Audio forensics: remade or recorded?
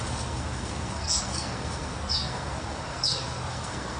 remade